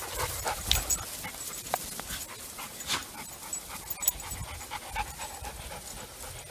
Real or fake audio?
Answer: real